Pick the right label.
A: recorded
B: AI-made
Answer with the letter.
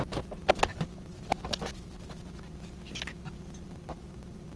A